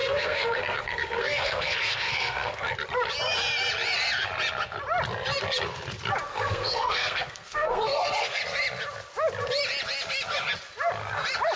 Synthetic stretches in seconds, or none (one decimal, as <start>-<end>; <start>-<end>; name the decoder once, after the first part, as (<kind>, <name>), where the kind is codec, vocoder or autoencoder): 0.0-2.7 (codec, SNAC); 6.3-8.4